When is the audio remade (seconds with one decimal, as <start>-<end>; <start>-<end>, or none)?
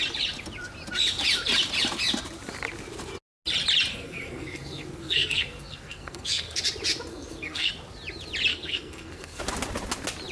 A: 3.9-6.6; 7.1-7.7; 8.5-9.4